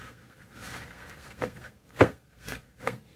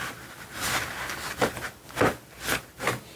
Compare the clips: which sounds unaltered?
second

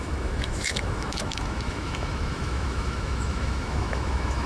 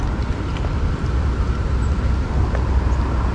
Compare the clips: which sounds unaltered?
second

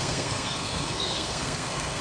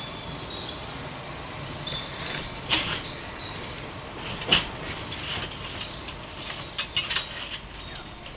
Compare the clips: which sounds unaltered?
second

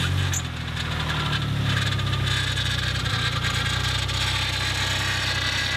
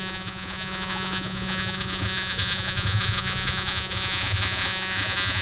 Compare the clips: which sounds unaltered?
first